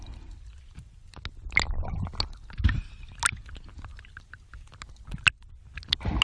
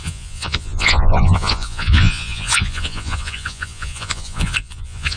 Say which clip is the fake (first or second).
second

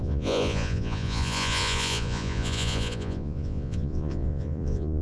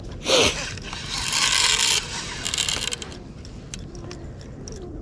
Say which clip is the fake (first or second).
first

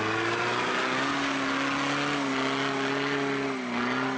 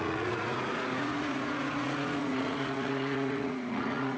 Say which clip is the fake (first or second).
second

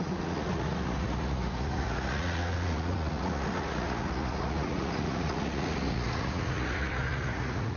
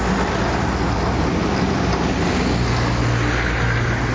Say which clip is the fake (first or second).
first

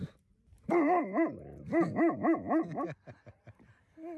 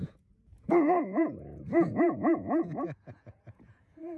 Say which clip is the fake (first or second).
second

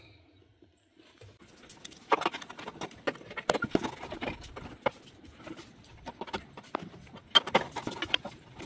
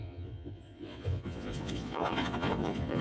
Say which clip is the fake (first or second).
second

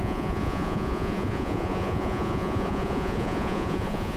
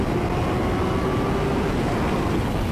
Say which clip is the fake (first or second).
first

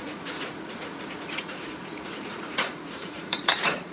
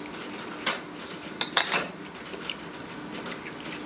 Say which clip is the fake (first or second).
first